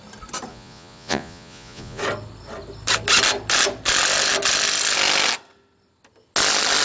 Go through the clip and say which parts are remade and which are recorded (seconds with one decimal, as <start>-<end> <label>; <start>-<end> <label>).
0.0-0.5 recorded; 0.5-2.0 remade; 2.0-6.8 recorded